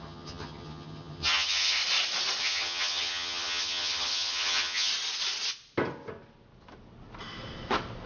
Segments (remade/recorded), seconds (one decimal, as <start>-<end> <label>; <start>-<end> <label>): 0.0-1.8 remade; 1.8-2.4 recorded; 2.4-4.9 remade; 4.9-8.1 recorded